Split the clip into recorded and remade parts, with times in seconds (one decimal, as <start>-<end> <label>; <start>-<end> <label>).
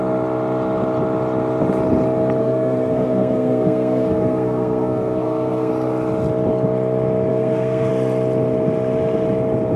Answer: 0.0-2.4 recorded; 2.4-5.7 remade; 5.7-7.3 recorded; 7.3-7.9 remade; 7.9-9.8 recorded